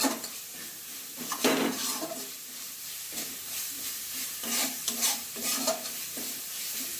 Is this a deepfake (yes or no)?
yes